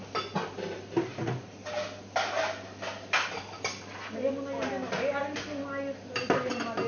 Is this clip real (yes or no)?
yes